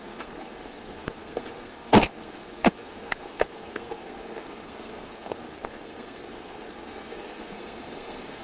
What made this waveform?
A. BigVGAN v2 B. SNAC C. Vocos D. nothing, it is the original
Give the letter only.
B